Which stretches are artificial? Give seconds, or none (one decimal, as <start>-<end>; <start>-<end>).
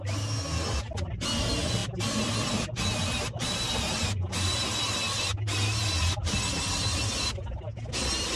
none